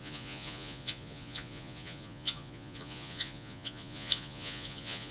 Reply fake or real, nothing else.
fake